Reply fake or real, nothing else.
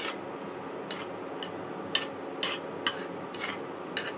real